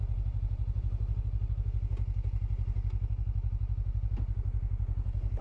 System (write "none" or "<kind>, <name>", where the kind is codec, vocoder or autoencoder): none